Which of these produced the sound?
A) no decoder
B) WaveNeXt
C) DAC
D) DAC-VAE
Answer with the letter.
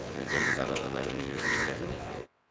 B